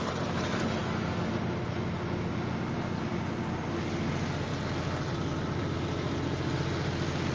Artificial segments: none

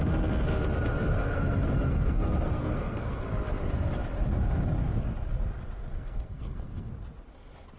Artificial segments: 1.1-3.2 (codec, SNAC); 5.9-6.9

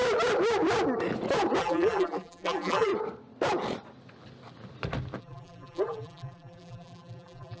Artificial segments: 1.6-2.9 (vocoder, BigVGAN v2); 5.2-7.6

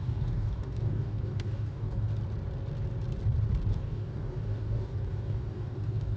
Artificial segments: 0.0-2.1 (codec, DAC); 3.7-6.2

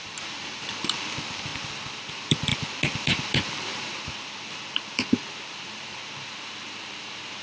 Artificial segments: 0.0-1.5 (vocoder, BigVGAN v2); 2.0-7.4